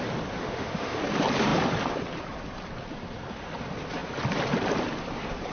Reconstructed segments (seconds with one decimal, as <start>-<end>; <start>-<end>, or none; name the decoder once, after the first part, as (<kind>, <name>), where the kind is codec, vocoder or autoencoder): 0.4-1.0 (autoencoder, DAC-VAE)